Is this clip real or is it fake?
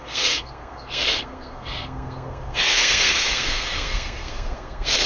fake